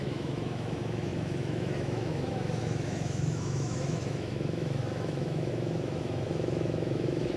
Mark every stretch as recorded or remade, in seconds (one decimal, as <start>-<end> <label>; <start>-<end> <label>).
0.0-7.4 remade